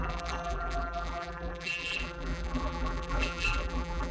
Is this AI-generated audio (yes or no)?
yes